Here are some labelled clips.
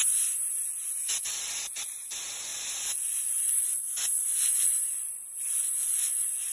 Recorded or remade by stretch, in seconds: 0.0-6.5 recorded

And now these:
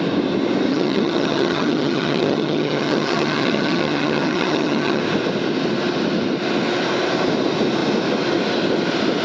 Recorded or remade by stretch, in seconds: 0.0-0.7 recorded; 0.7-5.0 remade; 5.0-9.2 recorded

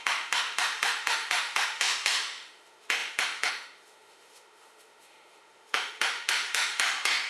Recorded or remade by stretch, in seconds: 0.0-7.3 remade

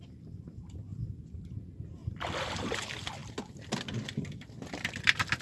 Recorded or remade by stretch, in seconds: 0.0-5.4 recorded